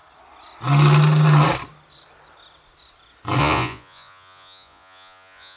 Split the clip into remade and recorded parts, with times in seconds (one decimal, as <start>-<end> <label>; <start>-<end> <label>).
0.0-3.4 recorded; 3.4-5.6 remade